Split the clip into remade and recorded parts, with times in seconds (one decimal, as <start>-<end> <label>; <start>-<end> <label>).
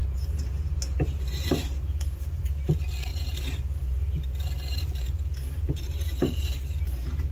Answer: 0.0-2.7 remade; 2.7-3.1 recorded; 3.1-7.3 remade